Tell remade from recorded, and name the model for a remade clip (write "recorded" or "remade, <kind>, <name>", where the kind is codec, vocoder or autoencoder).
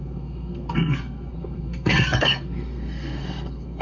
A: remade, codec, SNAC